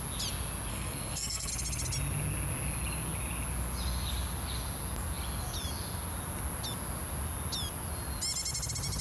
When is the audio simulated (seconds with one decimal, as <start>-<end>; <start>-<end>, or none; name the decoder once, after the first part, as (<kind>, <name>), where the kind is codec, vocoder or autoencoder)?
0.7-1.5 (codec, SNAC)